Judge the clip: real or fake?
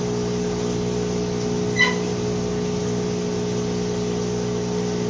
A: real